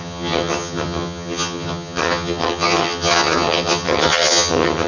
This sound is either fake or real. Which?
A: fake